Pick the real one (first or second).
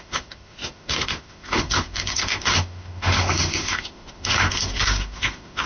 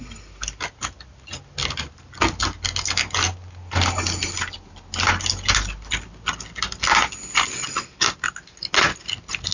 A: second